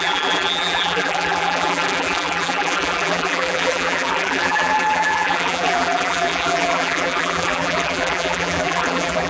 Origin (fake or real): fake